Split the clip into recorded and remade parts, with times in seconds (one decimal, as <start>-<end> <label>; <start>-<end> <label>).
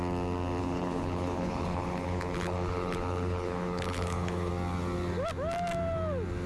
0.0-0.6 recorded; 0.6-4.5 remade; 4.5-6.5 recorded